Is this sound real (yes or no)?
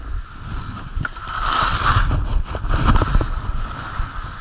yes